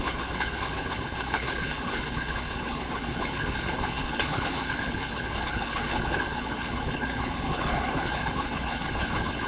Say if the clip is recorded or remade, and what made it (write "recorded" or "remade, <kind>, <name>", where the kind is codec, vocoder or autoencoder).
remade, codec, HILCodec